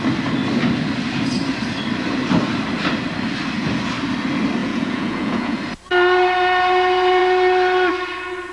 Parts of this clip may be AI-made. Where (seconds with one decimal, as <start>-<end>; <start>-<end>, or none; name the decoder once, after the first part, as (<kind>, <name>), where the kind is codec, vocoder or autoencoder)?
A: 4.6-5.6 (vocoder, Vocos)